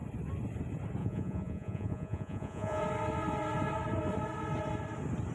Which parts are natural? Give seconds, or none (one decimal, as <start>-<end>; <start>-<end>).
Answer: 0.0-1.0; 2.8-5.3